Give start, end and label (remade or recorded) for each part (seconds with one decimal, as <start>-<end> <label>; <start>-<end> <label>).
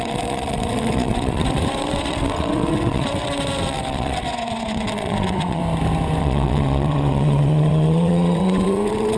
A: 0.0-5.6 remade; 5.6-6.2 recorded; 6.2-9.2 remade